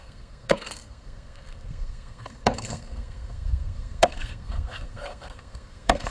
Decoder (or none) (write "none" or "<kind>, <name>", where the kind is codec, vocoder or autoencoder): codec, SNAC